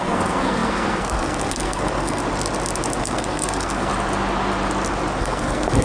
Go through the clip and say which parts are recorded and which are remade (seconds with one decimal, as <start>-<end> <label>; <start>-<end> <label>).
0.0-2.2 remade; 2.2-3.0 recorded; 3.0-3.9 remade; 3.9-5.2 recorded; 5.2-5.8 remade